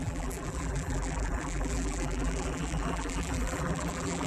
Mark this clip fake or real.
fake